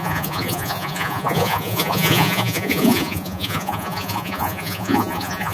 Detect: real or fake fake